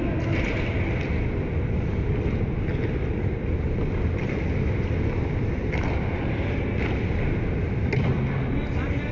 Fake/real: real